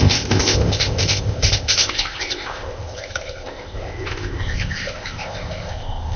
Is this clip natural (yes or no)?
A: no